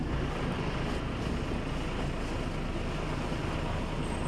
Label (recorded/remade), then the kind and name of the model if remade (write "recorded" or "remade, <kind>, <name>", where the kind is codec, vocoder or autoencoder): recorded